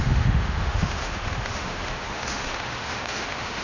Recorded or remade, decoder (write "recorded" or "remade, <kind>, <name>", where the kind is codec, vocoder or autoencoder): remade, autoencoder, DAC-VAE